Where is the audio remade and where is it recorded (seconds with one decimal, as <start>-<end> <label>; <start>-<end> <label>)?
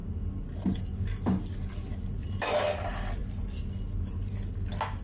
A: 0.0-5.0 recorded